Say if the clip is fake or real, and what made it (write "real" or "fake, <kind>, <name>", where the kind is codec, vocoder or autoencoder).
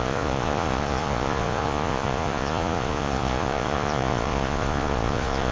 fake, vocoder, Vocos